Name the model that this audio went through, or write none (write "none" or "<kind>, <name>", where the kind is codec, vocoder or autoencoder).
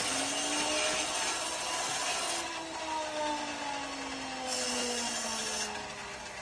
none